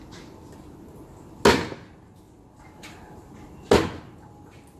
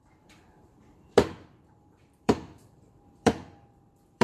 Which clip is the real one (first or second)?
first